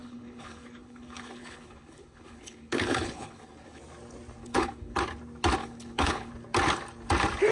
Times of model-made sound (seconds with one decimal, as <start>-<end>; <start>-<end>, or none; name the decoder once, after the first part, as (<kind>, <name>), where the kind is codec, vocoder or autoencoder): 0.0-3.8 (codec, HILCodec); 4.4-5.0; 5.6-6.3